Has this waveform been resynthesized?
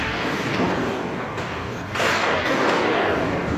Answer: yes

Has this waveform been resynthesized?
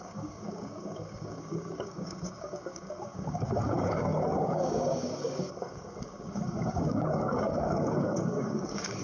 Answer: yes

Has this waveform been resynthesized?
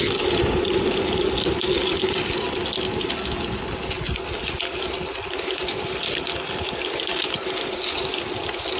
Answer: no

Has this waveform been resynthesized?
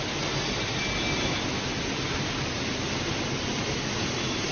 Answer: no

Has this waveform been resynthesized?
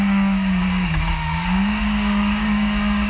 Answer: yes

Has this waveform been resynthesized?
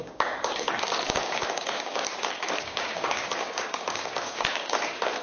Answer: yes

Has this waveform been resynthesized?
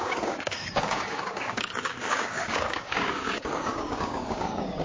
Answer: yes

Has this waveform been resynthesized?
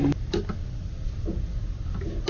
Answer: no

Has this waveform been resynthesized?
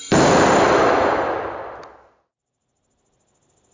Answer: no